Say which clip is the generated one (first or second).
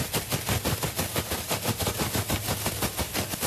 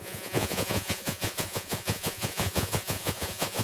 second